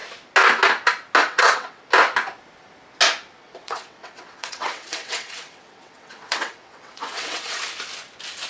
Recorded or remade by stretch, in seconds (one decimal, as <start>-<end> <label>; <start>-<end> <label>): 0.0-1.2 recorded; 1.2-1.9 remade; 1.9-3.4 recorded; 3.4-7.6 remade; 7.6-8.5 recorded